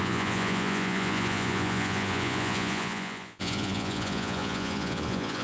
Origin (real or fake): fake